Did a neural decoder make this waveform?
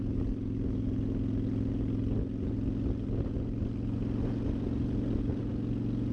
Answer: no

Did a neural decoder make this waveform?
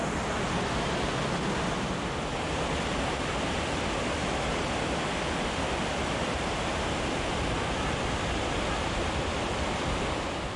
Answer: no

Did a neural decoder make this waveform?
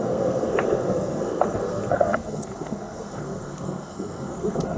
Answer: yes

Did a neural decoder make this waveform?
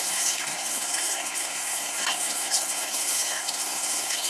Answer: yes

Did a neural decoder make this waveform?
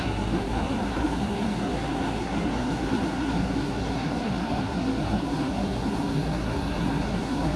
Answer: yes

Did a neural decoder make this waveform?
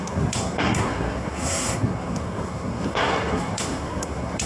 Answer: yes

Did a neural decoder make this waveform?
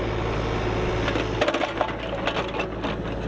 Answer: no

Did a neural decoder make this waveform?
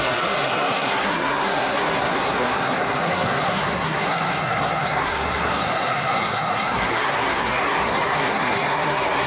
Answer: yes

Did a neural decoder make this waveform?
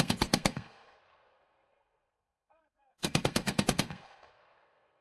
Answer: yes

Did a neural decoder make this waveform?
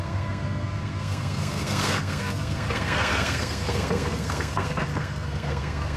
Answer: yes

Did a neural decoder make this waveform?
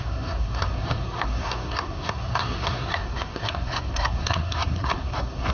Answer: yes